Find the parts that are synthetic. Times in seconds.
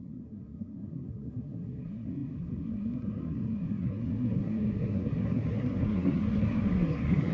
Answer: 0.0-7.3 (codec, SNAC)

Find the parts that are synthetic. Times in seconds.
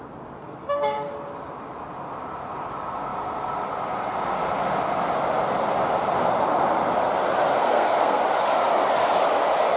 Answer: 0.4-1.1 (codec, SNAC); 7.6-8.2